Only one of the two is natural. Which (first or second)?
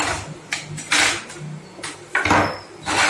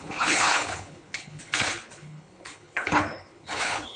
first